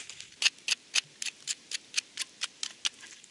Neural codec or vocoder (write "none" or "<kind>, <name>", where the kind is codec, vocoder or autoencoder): none